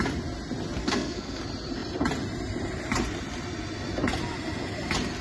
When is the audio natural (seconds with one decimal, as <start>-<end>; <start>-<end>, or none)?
0.0-0.8; 1.4-5.2